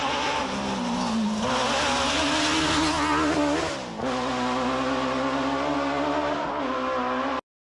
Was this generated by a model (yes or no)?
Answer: no